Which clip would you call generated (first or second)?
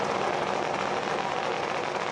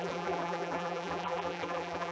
second